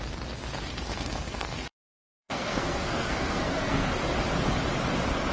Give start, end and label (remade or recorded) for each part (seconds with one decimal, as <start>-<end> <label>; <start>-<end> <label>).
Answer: 0.0-0.7 recorded; 0.7-3.9 remade; 3.9-5.3 recorded